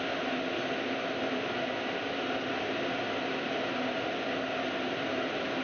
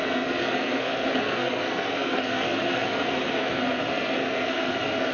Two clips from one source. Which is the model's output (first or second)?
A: second